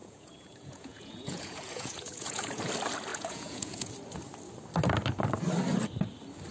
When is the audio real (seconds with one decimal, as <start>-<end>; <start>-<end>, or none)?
2.6-3.1; 3.9-6.5